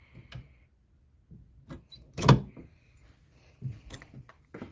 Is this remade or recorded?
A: recorded